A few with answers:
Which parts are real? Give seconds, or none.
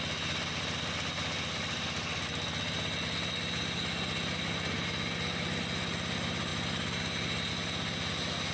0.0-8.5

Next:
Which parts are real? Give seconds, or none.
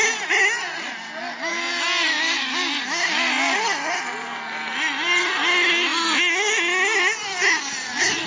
0.0-8.3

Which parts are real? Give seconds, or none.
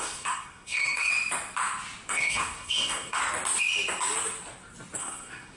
1.1-2.1; 3.2-5.0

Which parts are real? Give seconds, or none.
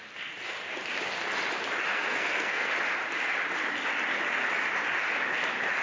0.0-1.9; 2.7-5.8